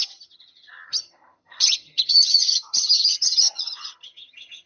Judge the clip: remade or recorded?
remade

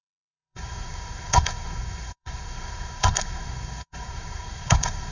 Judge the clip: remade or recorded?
remade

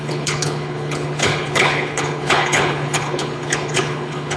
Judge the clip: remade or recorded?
remade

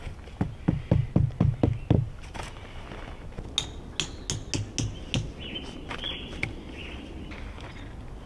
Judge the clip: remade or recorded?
recorded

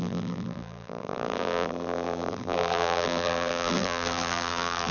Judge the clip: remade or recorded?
remade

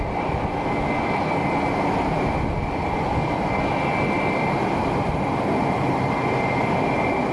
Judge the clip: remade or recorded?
recorded